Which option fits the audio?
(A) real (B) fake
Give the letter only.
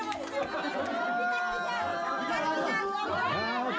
A